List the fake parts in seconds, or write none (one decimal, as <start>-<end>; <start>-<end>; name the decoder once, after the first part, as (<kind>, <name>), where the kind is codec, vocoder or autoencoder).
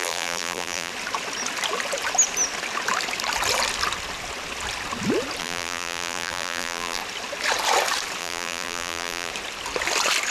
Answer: 0.0-0.9 (vocoder, BigVGAN v2); 5.4-7.0; 8.2-9.3